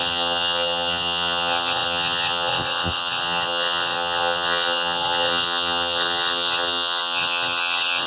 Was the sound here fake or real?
fake